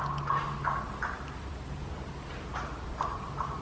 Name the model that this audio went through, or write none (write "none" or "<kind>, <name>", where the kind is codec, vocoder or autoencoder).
none